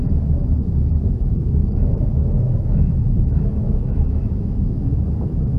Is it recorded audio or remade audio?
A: remade